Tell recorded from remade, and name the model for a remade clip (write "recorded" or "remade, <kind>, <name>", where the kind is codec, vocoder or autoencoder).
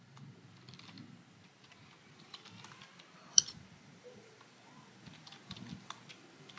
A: recorded